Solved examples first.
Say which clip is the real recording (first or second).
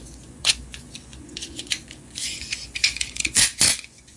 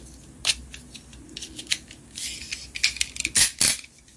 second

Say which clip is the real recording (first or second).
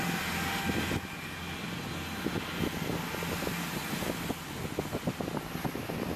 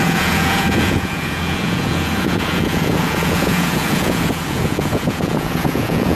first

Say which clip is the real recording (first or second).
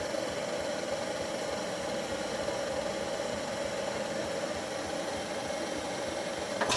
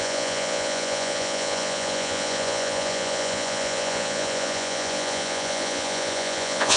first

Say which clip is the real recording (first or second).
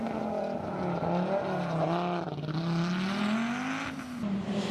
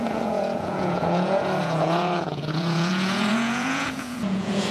first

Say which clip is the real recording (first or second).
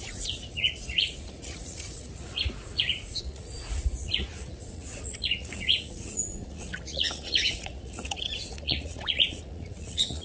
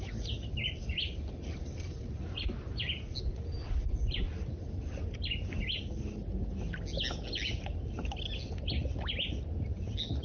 second